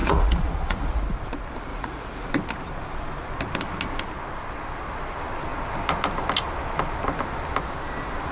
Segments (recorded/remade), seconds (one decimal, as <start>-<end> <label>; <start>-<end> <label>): 0.0-1.0 remade; 1.0-1.7 recorded; 1.7-2.3 remade; 2.3-8.3 recorded